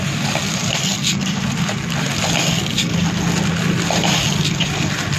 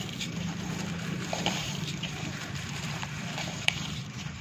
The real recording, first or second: first